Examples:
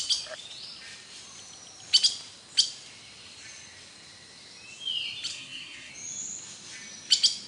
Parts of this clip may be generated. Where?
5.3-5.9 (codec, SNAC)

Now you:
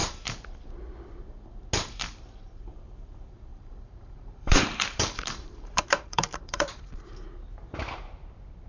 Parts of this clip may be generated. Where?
3.5-7.1 (vocoder, BigVGAN v2)

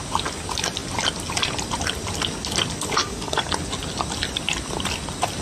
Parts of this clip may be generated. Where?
3.0-3.5 (codec, DAC)

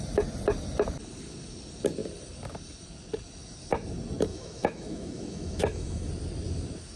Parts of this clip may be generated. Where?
4.3-6.1 (autoencoder, DAC-VAE)